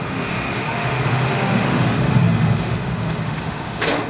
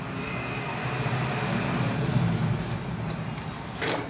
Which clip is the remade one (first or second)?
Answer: first